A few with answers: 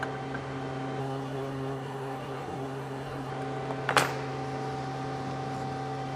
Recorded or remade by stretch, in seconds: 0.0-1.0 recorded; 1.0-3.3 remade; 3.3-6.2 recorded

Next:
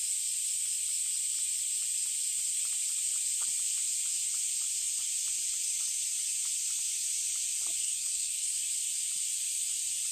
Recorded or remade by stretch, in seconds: 0.0-7.8 recorded; 7.8-8.5 remade; 8.5-10.1 recorded

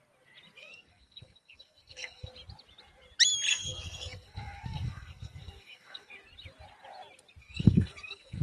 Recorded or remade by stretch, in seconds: 0.0-0.6 recorded; 0.6-2.3 remade; 2.3-3.5 recorded; 3.5-6.1 remade; 6.1-7.4 recorded; 7.4-8.4 remade

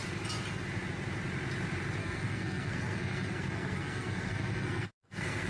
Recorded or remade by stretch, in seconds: 0.0-2.0 recorded; 2.0-5.5 remade